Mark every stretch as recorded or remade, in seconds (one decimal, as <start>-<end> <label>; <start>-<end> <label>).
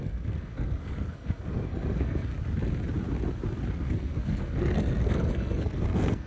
0.0-2.3 remade; 2.3-3.7 recorded; 3.7-6.3 remade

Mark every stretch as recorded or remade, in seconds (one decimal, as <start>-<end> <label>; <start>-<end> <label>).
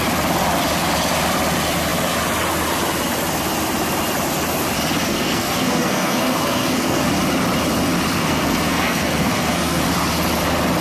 0.0-5.1 recorded; 5.1-7.1 remade; 7.1-8.2 recorded; 8.2-9.8 remade; 9.8-10.8 recorded